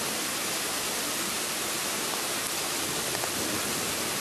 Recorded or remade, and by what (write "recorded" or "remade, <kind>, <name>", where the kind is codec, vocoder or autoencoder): recorded